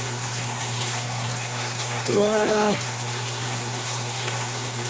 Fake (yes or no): yes